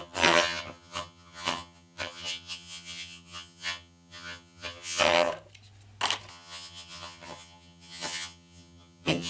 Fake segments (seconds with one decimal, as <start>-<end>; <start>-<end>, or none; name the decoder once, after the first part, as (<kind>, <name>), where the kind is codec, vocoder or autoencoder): 0.0-5.3 (vocoder, HiFi-GAN); 6.3-9.3